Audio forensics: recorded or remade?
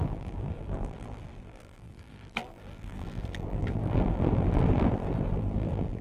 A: remade